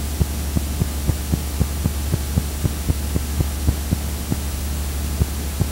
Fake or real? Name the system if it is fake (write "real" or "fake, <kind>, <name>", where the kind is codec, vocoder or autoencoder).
real